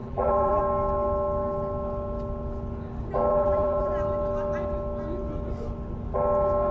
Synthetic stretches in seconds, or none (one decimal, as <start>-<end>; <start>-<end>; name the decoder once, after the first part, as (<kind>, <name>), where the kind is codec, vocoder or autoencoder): 0.0-0.6 (vocoder, BigVGAN v2); 3.3-3.9